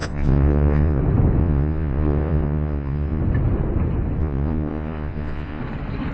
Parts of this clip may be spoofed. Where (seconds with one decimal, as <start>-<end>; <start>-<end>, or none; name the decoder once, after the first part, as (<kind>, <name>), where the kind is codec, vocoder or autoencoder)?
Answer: 0.0-1.0 (vocoder, Vocos); 1.4-3.2; 4.2-5.6